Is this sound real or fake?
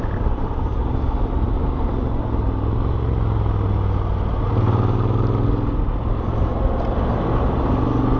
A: real